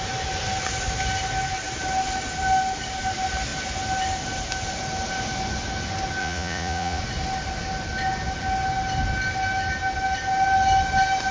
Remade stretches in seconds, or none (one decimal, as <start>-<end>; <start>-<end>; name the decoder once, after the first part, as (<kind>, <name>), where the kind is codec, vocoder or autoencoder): 6.2-7.0 (vocoder, Vocos)